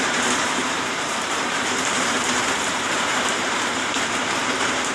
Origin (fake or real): fake